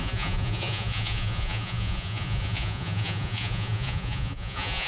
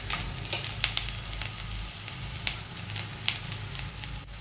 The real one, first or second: second